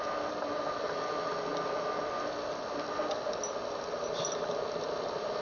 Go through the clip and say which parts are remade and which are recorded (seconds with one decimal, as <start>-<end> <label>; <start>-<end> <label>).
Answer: 0.0-5.4 recorded